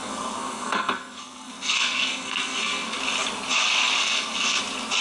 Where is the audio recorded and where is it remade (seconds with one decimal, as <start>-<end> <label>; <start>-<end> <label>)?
0.0-3.0 remade; 3.0-4.0 recorded; 4.0-4.6 remade; 4.6-5.0 recorded